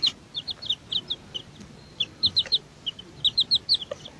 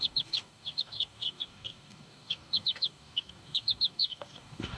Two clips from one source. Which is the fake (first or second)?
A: second